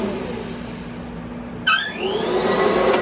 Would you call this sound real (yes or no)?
yes